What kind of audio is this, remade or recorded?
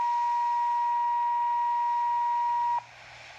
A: recorded